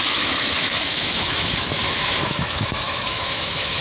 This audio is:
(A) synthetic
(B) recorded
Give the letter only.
A